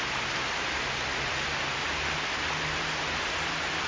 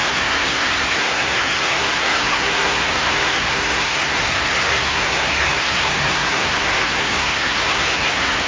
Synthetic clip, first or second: second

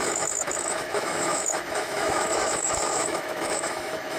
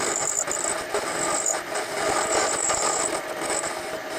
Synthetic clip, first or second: first